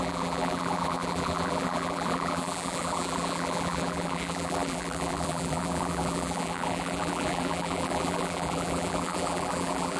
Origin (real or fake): fake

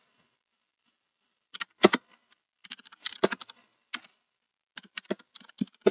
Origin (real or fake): real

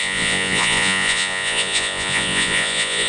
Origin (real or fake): fake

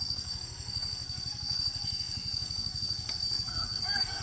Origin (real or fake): fake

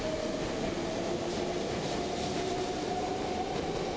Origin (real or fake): real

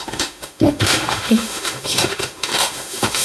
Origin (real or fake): fake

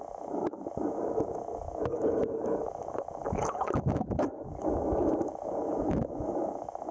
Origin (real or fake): fake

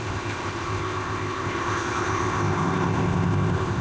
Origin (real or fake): fake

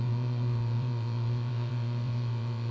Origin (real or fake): fake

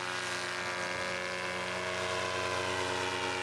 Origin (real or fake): real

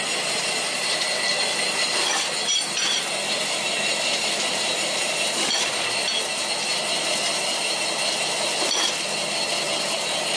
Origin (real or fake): real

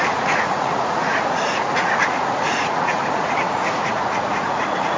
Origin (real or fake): fake